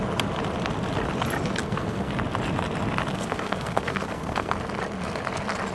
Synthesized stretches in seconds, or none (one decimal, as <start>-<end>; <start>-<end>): 1.6-2.1; 3.1-4.5